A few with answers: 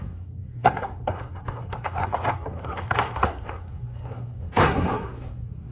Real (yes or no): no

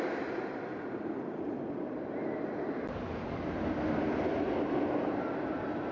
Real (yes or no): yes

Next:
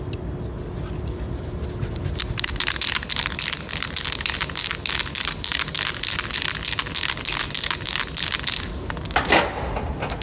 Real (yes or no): yes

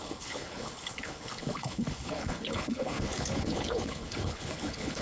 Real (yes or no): no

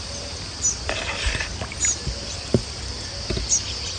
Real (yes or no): yes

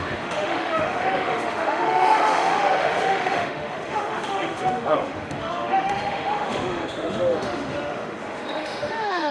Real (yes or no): no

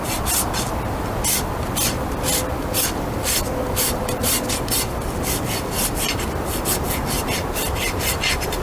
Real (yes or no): yes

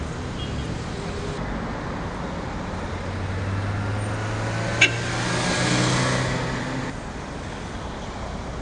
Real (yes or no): yes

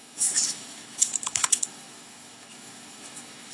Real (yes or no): no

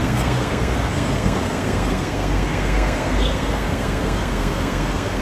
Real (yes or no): no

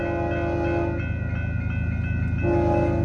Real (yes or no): yes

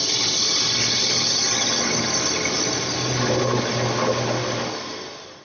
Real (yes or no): yes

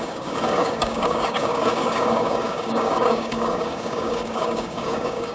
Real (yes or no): no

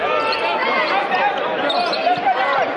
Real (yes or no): yes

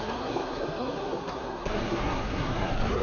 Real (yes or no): no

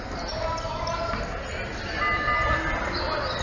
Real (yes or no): yes